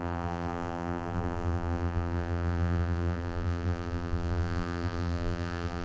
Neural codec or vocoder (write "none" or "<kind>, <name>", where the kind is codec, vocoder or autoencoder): vocoder, BigVGAN v2